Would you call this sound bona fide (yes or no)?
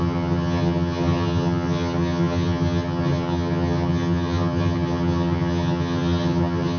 no